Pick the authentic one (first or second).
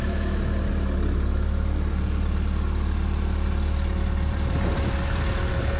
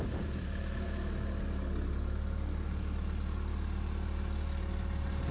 second